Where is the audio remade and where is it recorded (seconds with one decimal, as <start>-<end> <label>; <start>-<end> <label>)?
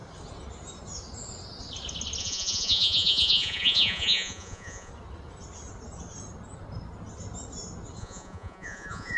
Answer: 0.0-2.2 recorded; 2.2-4.9 remade; 4.9-8.0 recorded; 8.0-9.2 remade